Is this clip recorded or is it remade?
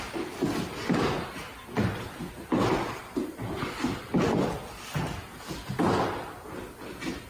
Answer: recorded